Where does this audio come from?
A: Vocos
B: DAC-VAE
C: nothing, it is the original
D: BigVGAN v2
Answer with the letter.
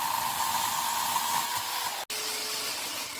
C